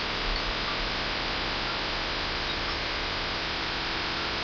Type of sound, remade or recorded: recorded